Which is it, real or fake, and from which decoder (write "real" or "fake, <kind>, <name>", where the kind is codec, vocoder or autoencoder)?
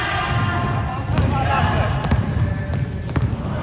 real